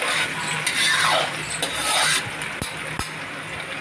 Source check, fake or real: real